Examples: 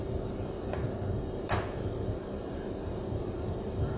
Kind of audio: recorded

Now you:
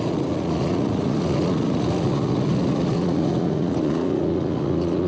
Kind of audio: remade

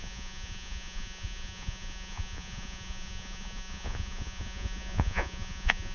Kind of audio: remade